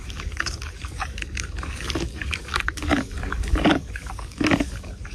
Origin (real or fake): fake